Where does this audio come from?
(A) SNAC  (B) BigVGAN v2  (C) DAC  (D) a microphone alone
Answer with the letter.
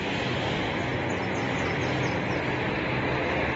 D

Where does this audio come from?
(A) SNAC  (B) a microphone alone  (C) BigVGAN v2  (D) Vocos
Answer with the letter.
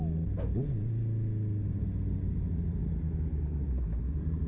B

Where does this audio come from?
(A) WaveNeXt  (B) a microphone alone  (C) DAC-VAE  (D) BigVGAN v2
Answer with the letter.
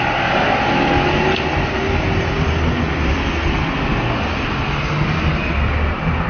B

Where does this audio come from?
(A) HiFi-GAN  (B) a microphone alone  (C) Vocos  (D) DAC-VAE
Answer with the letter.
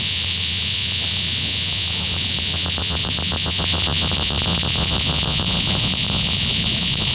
C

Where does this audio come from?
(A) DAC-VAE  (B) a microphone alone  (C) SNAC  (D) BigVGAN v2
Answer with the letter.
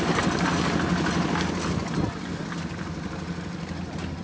B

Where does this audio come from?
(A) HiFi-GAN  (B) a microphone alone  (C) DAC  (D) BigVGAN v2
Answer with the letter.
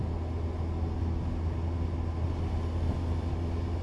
B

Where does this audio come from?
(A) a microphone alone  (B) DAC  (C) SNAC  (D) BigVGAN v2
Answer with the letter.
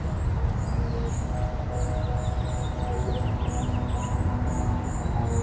A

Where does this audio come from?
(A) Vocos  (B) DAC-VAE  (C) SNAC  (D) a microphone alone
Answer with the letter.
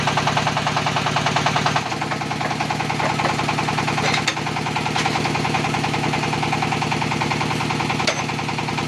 D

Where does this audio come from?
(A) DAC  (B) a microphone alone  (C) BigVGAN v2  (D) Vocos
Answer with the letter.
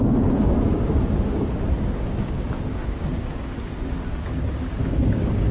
A